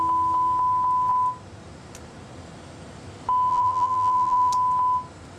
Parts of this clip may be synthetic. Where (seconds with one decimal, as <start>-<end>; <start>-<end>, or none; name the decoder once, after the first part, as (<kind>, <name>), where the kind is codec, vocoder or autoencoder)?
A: 3.5-4.5 (vocoder, BigVGAN v2)